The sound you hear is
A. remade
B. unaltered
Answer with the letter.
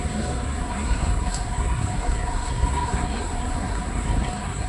A